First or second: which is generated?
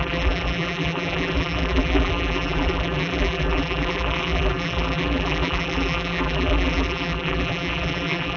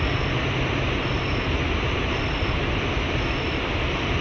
first